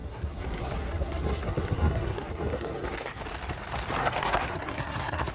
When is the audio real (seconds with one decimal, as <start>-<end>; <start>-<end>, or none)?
3.2-4.0